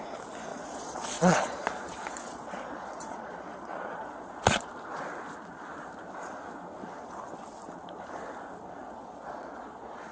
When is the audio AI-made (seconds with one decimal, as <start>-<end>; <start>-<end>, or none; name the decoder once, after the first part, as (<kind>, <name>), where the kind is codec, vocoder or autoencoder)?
0.5-4.7 (vocoder, Vocos); 8.8-10.1